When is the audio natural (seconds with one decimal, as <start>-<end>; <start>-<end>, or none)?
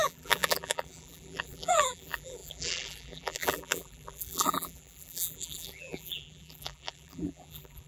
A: none